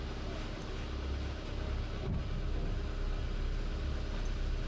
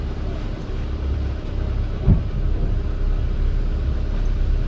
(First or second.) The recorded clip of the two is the first